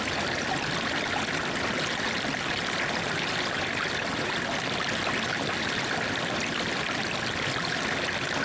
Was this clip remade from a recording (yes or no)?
no